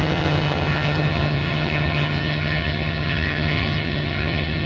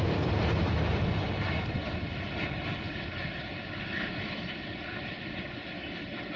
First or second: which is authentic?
second